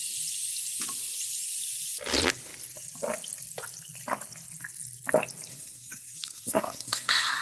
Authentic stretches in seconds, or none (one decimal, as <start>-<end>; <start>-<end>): 0.0-5.5